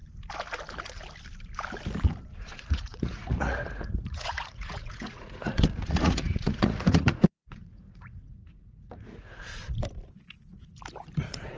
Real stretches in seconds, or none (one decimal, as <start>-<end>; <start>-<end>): 0.0-2.4; 9.5-11.2